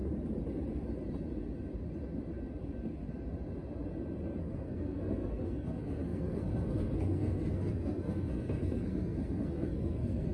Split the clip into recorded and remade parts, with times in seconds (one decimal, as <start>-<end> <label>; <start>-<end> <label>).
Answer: 0.0-4.4 recorded; 4.4-10.3 remade